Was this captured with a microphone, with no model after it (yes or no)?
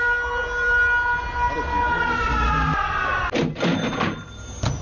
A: yes